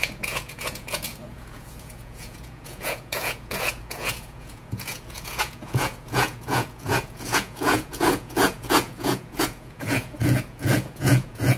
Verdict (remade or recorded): remade